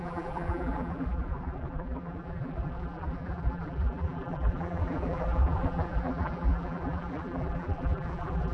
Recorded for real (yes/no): no